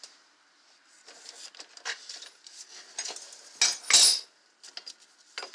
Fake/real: real